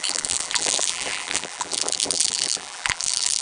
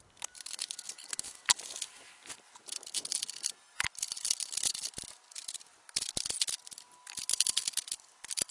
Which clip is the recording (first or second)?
second